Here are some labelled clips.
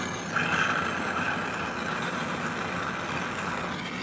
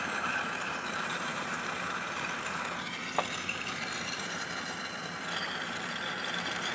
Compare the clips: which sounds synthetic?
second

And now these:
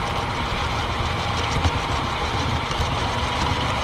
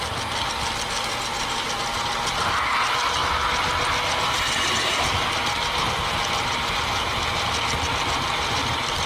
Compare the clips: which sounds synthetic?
first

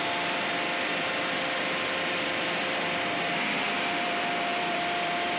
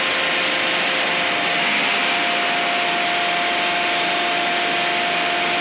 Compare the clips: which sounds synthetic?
first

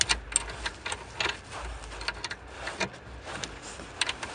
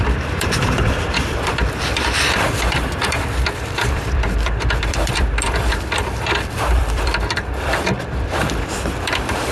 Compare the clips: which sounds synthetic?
second